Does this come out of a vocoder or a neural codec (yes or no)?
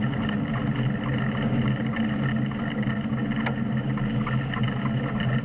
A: no